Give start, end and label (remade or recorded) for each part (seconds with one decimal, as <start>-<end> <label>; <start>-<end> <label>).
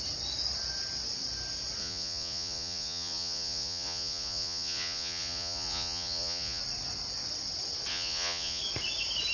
0.0-1.8 recorded; 1.8-6.6 remade; 6.6-7.9 recorded; 7.9-8.6 remade; 8.6-9.3 recorded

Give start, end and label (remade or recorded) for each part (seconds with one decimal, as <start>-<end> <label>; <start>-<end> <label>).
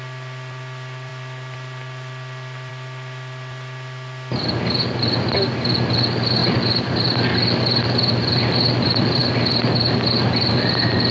0.0-11.1 recorded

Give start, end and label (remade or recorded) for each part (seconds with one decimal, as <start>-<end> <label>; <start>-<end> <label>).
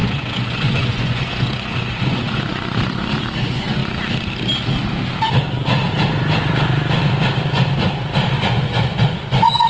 0.0-3.8 remade; 3.8-8.4 recorded; 8.4-9.7 remade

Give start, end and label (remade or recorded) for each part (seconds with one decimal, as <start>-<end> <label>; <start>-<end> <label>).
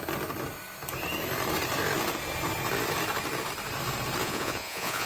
0.0-4.2 recorded; 4.2-5.1 remade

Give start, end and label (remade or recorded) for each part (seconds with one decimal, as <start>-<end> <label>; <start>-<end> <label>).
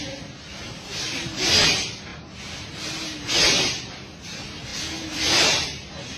0.0-6.2 recorded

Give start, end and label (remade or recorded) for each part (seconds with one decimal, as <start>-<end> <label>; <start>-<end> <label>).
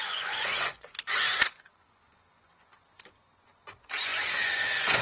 0.0-5.0 remade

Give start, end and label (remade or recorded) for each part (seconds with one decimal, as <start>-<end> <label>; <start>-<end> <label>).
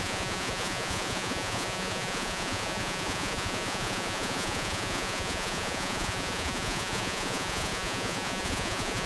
0.0-9.1 remade